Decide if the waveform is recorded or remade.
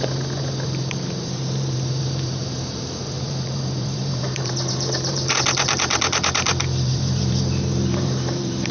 remade